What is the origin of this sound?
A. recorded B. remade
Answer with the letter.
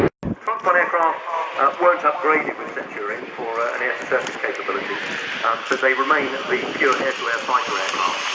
A